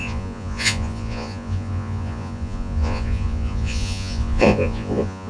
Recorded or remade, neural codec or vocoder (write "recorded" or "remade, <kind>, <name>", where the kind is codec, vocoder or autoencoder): remade, vocoder, Vocos